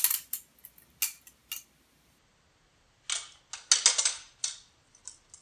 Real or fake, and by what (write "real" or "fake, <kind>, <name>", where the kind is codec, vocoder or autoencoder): real